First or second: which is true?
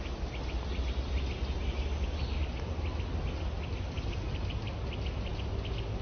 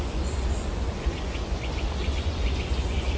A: first